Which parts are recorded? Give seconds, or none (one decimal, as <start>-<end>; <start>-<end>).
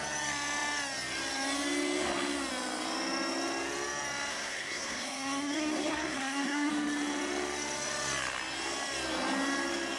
0.0-4.3; 6.7-10.0